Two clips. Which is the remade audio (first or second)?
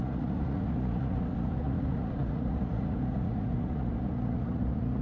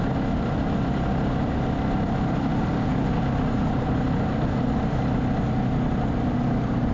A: first